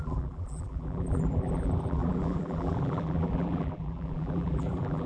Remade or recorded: remade